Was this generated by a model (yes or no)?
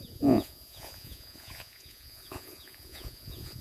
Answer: yes